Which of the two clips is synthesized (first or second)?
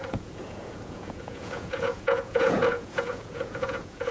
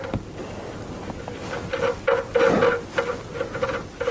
first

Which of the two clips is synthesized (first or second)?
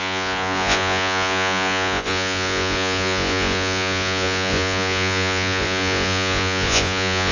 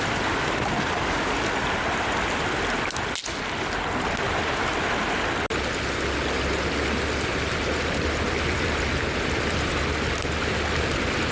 first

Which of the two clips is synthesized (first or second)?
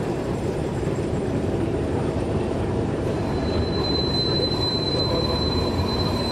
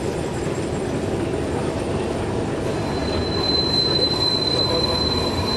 first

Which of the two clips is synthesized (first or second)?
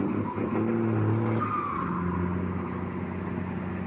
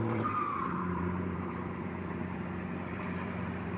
second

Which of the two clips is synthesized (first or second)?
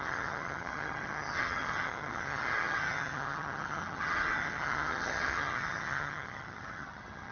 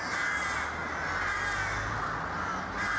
first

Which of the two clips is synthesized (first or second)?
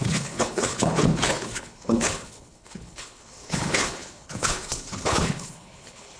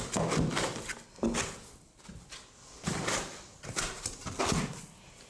first